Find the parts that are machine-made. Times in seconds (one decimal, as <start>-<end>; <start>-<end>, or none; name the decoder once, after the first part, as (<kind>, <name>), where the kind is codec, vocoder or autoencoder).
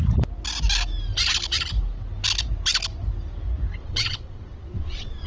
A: 3.8-5.3 (vocoder, WaveNeXt)